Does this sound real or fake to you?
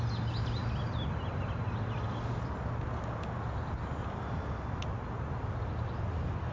real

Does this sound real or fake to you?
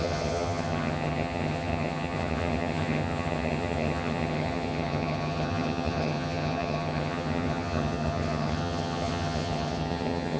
fake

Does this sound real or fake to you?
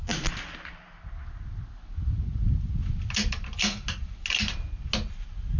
real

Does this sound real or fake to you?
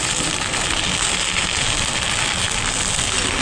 real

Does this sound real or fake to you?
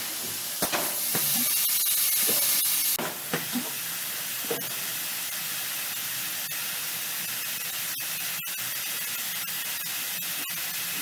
real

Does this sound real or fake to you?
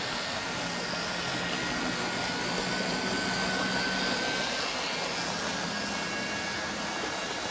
real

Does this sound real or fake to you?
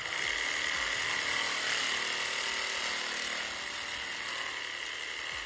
real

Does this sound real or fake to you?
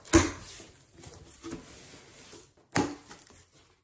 real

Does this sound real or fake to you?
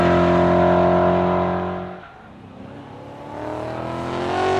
real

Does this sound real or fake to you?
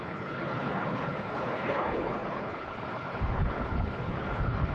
fake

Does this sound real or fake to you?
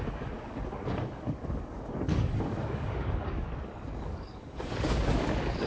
fake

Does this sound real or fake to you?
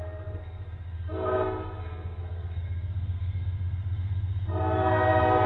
fake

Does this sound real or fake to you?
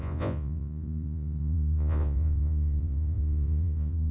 fake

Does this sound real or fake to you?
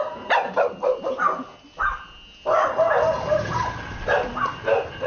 real